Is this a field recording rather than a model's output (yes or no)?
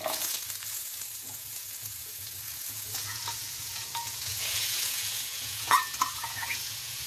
no